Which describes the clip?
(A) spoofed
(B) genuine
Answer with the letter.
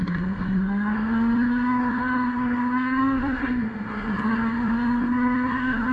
A